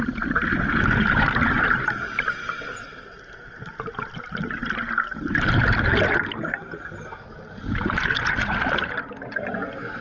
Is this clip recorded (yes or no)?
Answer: yes